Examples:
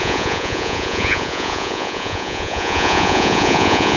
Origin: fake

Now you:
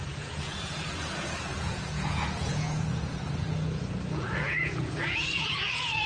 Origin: fake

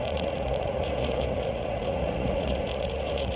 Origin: fake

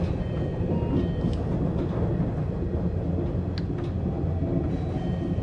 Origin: real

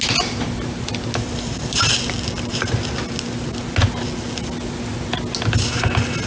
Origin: real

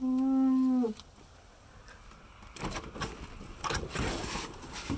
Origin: real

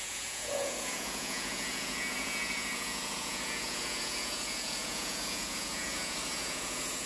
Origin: fake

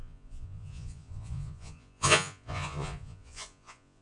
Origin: fake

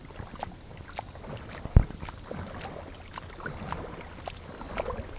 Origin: real